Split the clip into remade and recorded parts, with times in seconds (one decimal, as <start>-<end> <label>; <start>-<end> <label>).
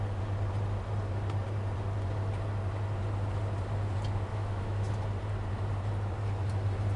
0.0-4.3 recorded; 4.3-4.9 remade; 4.9-7.0 recorded